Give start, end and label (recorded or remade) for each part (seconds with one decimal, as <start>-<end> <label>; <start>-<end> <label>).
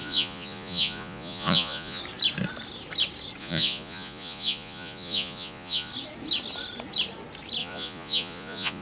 0.0-2.0 remade; 2.0-3.4 recorded; 3.4-5.9 remade; 5.9-7.6 recorded; 7.6-8.8 remade